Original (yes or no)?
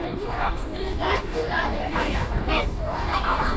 no